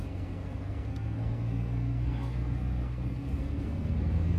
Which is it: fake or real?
fake